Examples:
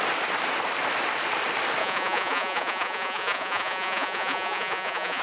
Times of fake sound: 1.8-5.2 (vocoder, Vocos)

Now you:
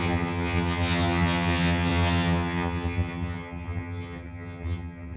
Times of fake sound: 0.0-5.2 (vocoder, HiFi-GAN)

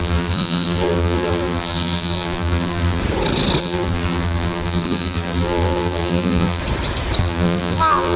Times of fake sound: 0.0-3.0 (vocoder, BigVGAN v2); 3.6-6.6; 7.2-8.2